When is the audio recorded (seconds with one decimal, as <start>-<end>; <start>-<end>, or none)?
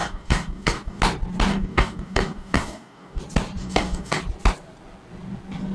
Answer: 1.0-1.5; 3.2-3.6; 4.2-5.7